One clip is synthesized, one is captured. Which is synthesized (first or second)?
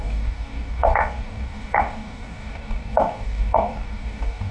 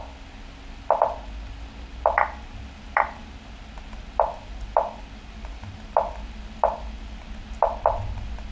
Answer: first